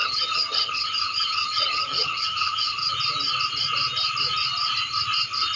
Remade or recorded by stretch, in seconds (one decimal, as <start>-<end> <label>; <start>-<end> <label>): 0.0-2.9 remade; 2.9-5.6 recorded

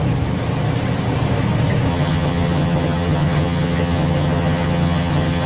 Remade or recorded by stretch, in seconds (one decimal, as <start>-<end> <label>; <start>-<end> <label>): 0.0-1.9 recorded; 1.9-5.5 remade

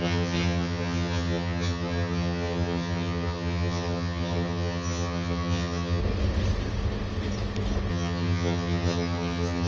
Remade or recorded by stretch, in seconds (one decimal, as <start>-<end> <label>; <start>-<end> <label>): 0.0-6.0 remade; 6.0-7.9 recorded; 7.9-9.7 remade

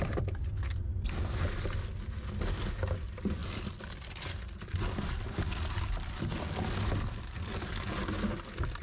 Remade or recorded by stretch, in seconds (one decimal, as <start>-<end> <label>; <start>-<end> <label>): 0.0-8.8 recorded

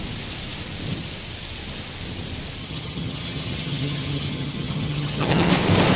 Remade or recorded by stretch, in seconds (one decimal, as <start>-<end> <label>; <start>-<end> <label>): 0.0-2.6 recorded; 2.6-5.5 remade; 5.5-6.0 recorded

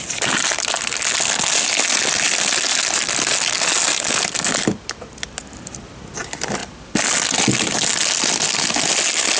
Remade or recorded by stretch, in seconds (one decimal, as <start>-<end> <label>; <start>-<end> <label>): 0.0-9.4 recorded

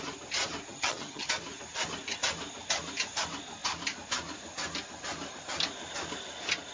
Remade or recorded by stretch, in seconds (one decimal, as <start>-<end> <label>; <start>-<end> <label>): 0.0-0.7 recorded; 0.7-1.3 remade; 1.3-6.7 recorded